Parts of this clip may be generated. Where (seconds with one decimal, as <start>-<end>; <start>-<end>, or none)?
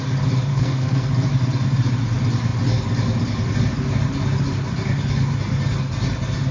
0.5-1.1